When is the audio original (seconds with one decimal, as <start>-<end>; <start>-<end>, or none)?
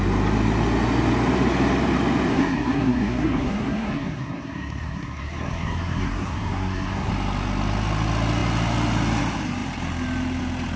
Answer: 0.0-2.3; 7.1-10.8